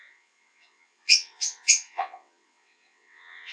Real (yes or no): no